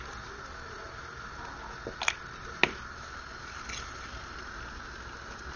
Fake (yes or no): no